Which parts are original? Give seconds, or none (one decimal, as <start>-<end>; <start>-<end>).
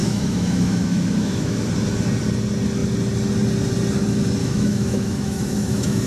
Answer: 1.7-4.4